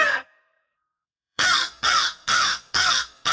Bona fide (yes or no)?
no